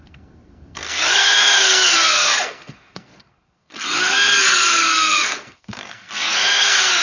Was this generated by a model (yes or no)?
yes